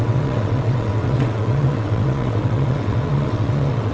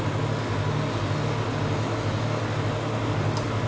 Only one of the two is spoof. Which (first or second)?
first